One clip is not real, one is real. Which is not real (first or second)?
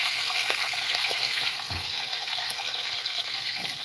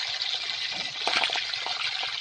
first